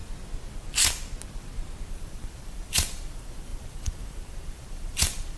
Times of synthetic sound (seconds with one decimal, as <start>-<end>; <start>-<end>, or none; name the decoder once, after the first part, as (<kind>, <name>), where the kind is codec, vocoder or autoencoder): 1.9-5.4 (vocoder, BigVGAN v2)